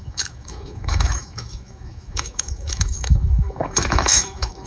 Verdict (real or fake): fake